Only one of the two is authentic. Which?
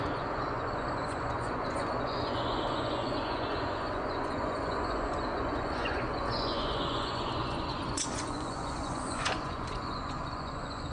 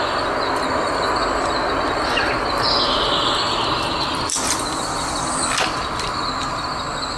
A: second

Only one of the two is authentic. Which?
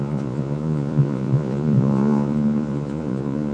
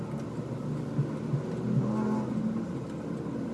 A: second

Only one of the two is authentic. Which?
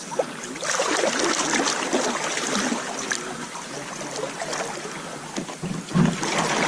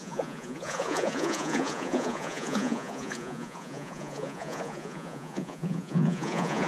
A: first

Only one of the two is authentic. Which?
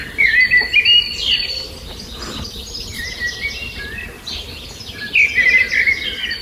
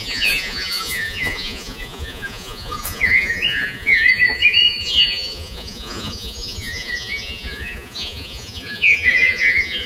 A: first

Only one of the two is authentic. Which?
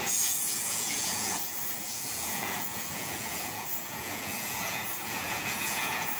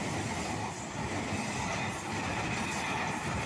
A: second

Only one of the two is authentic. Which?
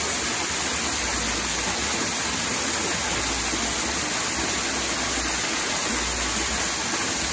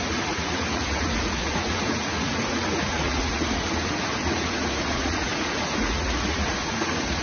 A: first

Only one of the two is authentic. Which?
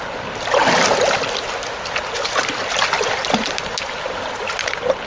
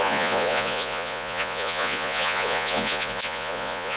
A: first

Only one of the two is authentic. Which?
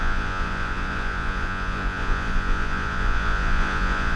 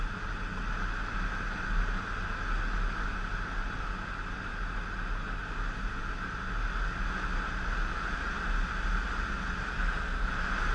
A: second